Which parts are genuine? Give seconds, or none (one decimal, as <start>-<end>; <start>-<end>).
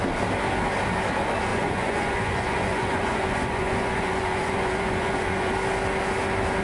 0.0-1.5; 5.5-6.6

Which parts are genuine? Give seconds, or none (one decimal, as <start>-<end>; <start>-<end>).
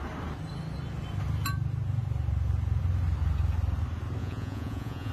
0.0-4.2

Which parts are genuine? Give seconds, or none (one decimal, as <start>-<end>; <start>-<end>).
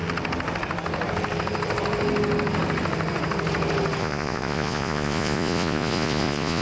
0.0-4.0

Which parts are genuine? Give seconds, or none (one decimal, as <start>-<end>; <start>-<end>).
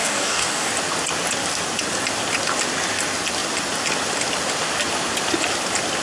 0.7-6.0